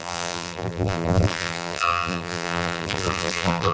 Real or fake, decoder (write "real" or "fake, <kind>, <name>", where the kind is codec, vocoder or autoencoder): fake, vocoder, BigVGAN v2